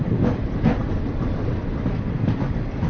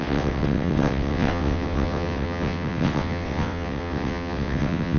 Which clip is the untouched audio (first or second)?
first